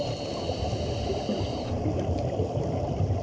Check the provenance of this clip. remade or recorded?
recorded